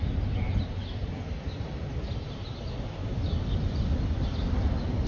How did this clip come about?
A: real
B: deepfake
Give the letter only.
A